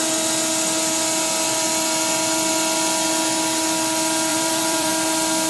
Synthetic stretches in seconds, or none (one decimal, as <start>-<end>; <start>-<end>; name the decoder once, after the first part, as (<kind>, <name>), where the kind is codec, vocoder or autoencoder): 4.3-4.9 (vocoder, BigVGAN v2)

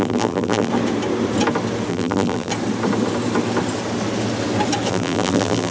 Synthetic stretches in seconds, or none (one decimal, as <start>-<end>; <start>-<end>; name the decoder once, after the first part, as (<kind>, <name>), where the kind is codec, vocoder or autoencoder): 0.0-0.7 (vocoder, BigVGAN v2); 1.9-2.5; 4.9-5.7

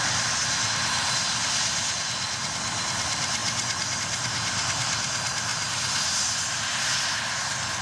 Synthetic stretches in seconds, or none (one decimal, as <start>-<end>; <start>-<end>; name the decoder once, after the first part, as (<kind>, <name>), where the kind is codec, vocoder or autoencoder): 1.4-2.1 (vocoder, BigVGAN v2)

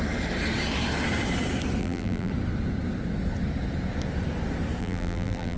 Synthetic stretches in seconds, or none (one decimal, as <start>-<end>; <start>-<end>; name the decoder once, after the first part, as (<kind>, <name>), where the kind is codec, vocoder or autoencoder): 1.8-2.3 (vocoder, BigVGAN v2); 4.8-5.6

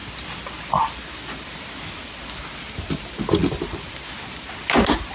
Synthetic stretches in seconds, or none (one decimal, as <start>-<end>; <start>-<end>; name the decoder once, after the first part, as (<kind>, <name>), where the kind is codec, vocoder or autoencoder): none

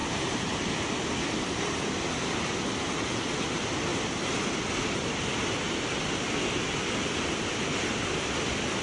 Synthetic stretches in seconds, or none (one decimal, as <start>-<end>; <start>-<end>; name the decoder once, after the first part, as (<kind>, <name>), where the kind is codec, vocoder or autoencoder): 0.0-0.8 (vocoder, BigVGAN v2); 7.7-8.3

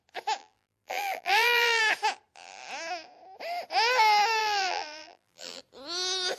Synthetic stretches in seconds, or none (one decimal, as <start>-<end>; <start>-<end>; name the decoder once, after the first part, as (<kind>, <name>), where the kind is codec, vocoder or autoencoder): 0.4-1.8 (vocoder, BigVGAN v2); 4.4-5.6